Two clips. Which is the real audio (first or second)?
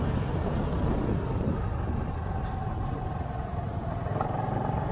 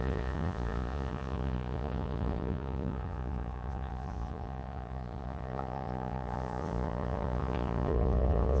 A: first